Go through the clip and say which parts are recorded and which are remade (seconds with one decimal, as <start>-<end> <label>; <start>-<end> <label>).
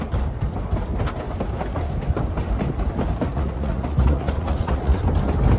0.0-3.3 recorded; 3.3-5.0 remade; 5.0-5.6 recorded